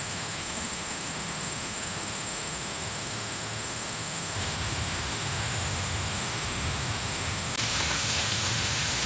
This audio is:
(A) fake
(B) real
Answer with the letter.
A